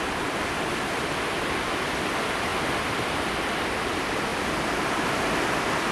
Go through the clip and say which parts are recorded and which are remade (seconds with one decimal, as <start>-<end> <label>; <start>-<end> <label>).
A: 0.0-2.5 remade; 2.5-3.3 recorded; 3.3-4.3 remade; 4.3-5.9 recorded